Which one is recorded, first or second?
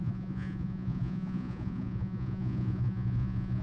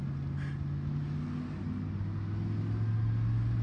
second